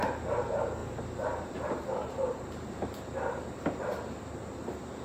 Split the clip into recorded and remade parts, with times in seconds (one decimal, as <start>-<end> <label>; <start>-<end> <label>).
0.0-0.8 recorded; 0.8-3.8 remade; 3.8-5.0 recorded